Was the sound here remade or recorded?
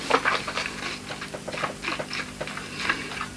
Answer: recorded